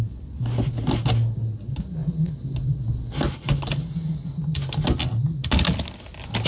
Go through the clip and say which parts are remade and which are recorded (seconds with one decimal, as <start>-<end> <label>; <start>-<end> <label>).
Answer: 0.0-6.5 recorded